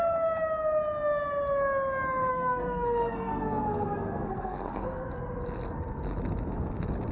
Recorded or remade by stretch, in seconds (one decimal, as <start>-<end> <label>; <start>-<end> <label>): 0.0-2.3 recorded; 2.3-5.1 remade; 5.1-7.1 recorded